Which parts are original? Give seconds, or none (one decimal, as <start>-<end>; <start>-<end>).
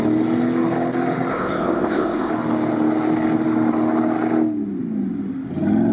0.0-1.3; 2.3-5.9